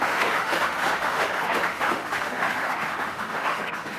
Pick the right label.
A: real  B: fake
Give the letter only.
B